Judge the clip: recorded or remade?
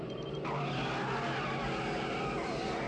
recorded